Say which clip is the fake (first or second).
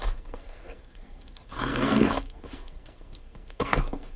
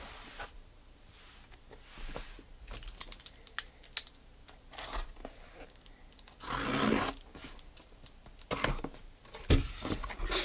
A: first